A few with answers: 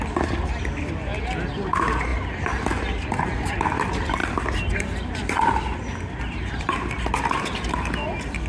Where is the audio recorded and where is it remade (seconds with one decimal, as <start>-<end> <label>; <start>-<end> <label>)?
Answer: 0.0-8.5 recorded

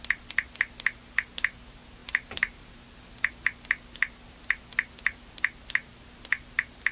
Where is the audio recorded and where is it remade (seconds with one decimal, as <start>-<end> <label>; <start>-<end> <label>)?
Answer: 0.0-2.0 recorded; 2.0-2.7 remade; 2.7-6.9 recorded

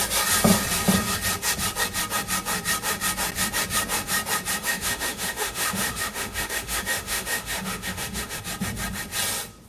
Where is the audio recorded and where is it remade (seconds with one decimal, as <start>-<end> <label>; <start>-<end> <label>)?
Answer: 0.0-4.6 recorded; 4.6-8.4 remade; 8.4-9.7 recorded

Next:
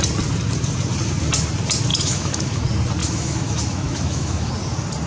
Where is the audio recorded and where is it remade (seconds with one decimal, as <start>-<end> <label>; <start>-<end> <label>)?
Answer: 0.0-1.9 recorded; 1.9-2.6 remade; 2.6-3.0 recorded; 3.0-4.5 remade; 4.5-5.1 recorded

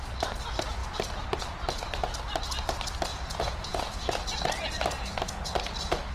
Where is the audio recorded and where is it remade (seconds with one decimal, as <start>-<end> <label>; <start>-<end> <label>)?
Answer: 0.0-3.1 recorded; 3.1-4.0 remade; 4.0-6.1 recorded

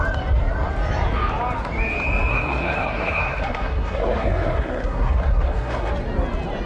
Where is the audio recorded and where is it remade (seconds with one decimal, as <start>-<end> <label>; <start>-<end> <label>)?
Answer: 0.0-2.3 recorded; 2.3-5.9 remade; 5.9-6.7 recorded

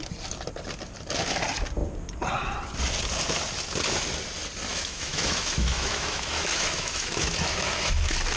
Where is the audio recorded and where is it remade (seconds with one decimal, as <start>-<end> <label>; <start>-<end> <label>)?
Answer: 0.0-4.7 recorded; 4.7-8.0 remade; 8.0-8.4 recorded

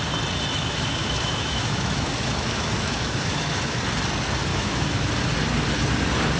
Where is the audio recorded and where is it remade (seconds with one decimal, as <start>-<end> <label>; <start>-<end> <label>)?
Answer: 0.0-0.5 recorded; 0.5-3.8 remade; 3.8-4.5 recorded; 4.5-5.1 remade; 5.1-6.4 recorded